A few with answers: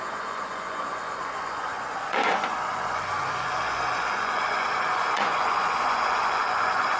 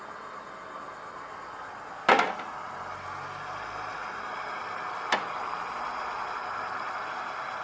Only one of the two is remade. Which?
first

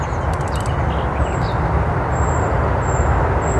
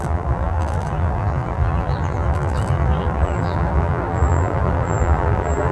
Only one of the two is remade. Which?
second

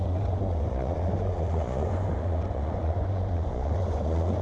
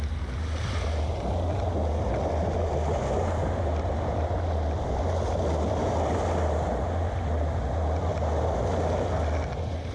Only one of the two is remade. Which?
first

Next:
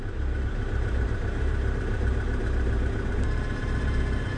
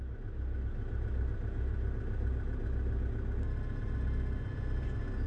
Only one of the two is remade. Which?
first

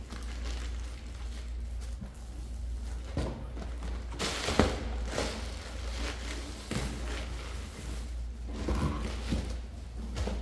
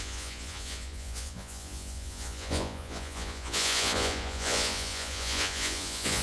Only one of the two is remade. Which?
second